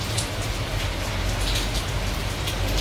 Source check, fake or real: real